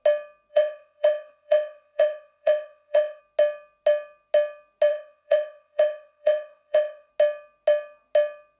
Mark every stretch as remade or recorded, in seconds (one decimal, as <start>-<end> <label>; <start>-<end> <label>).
0.0-0.5 recorded; 0.5-3.2 remade; 3.2-4.9 recorded; 4.9-7.1 remade; 7.1-8.6 recorded